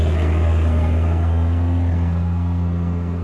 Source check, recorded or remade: remade